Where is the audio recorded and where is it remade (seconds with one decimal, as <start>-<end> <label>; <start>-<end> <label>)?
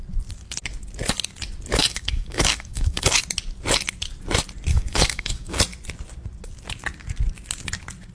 0.0-1.8 recorded; 1.8-3.2 remade; 3.2-4.7 recorded; 4.7-5.6 remade; 5.6-8.1 recorded